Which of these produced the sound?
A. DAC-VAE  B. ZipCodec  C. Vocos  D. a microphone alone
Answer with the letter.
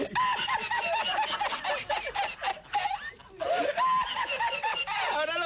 D